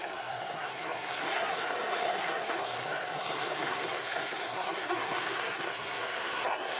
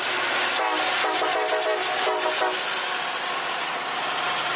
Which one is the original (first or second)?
second